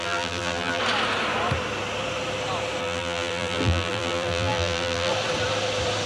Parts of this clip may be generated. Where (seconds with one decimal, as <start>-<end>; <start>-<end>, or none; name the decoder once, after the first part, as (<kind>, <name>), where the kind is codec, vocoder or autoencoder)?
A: 0.0-0.8 (vocoder, BigVGAN v2); 2.8-5.1